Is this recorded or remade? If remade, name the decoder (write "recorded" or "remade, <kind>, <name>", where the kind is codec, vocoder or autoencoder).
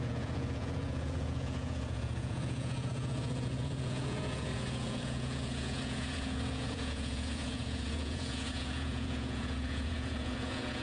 remade, vocoder, Vocos